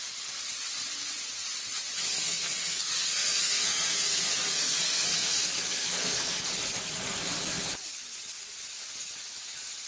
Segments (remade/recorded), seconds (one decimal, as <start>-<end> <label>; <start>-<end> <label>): 0.0-2.1 recorded; 2.1-6.5 remade; 6.5-9.9 recorded